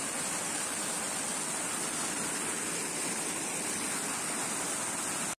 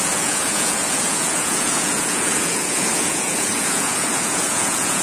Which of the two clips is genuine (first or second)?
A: first